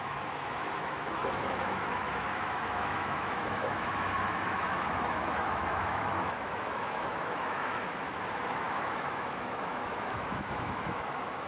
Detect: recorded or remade remade